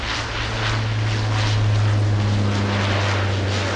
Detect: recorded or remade recorded